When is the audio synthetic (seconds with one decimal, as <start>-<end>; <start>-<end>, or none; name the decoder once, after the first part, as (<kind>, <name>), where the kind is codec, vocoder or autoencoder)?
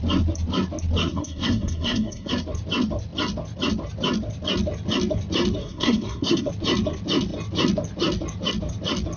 1.0-2.3 (codec, SNAC); 5.6-6.5